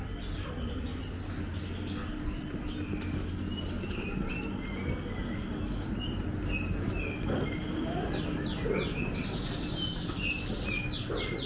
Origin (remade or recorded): recorded